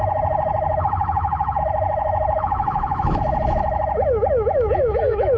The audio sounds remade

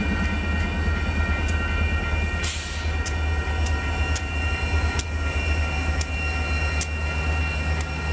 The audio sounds recorded